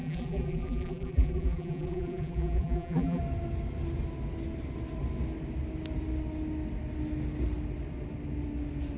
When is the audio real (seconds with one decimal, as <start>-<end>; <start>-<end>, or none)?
3.2-9.0